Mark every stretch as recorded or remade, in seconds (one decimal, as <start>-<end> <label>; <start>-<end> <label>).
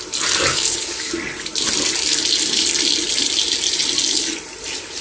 0.0-0.5 recorded; 0.5-1.1 remade; 1.1-5.0 recorded